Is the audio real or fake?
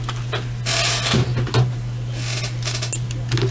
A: real